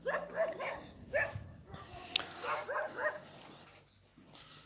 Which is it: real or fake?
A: real